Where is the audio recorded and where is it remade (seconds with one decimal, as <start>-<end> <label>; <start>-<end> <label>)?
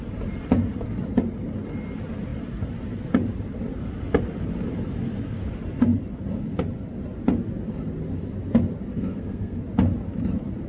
0.0-8.9 recorded; 8.9-9.6 remade; 9.6-10.7 recorded